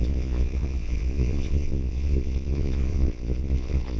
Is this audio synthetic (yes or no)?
yes